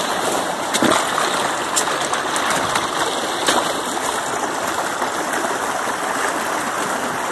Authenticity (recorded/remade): recorded